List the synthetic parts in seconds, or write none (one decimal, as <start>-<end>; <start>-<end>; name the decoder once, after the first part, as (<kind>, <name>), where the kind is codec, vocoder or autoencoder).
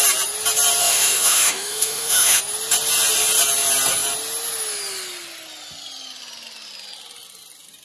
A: 0.8-2.4 (autoencoder, DAC-VAE)